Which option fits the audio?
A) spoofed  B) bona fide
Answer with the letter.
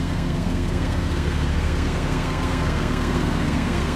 A